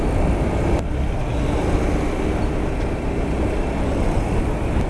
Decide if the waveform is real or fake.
real